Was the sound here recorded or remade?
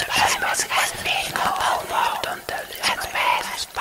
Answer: recorded